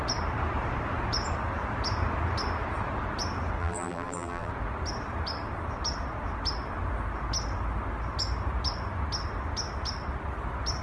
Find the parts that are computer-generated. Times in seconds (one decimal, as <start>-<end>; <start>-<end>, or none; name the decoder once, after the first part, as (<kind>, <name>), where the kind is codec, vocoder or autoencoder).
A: 3.6-4.5 (vocoder, BigVGAN v2)